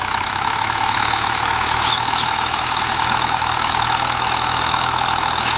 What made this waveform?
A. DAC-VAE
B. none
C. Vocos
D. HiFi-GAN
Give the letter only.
A